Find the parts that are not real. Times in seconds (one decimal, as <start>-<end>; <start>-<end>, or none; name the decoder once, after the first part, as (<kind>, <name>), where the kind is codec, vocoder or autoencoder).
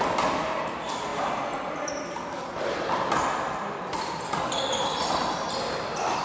none